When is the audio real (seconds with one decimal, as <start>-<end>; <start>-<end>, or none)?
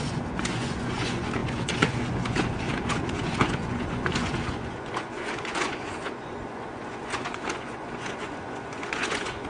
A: none